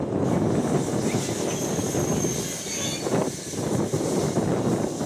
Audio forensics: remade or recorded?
recorded